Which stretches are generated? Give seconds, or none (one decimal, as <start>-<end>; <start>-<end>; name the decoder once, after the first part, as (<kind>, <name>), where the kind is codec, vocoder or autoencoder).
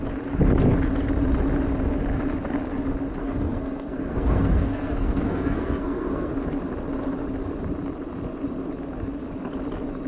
3.2-6.3 (codec, SNAC)